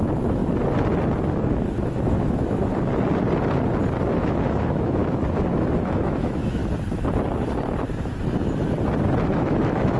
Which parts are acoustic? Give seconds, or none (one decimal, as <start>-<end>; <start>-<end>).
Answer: 0.4-1.3; 2.7-4.2; 5.0-5.7; 6.6-9.3